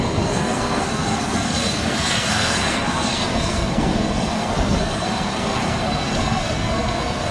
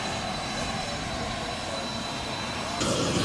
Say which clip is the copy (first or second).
first